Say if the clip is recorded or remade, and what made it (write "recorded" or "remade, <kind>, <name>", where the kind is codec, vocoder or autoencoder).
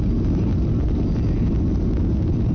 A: recorded